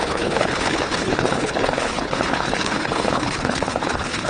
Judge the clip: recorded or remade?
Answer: remade